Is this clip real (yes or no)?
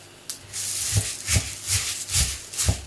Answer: yes